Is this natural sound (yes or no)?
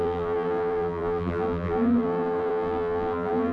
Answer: no